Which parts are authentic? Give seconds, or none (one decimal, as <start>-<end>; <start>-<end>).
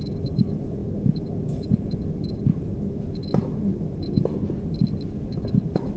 4.3-5.1